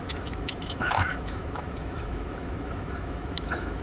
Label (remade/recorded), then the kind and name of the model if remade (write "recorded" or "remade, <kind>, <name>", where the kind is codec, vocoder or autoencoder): remade, autoencoder, DAC-VAE